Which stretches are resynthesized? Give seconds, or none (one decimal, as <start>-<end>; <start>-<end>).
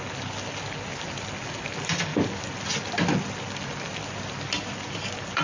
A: none